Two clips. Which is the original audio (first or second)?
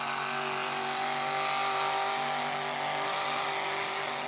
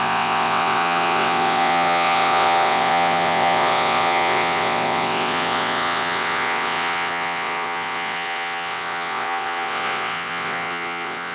first